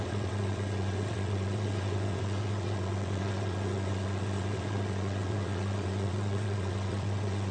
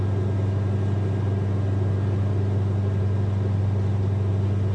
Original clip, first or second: second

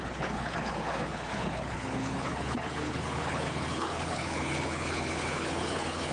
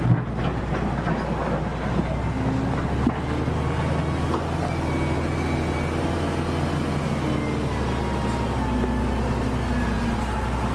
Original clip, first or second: second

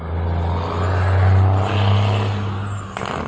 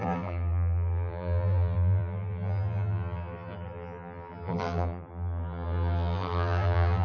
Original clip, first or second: first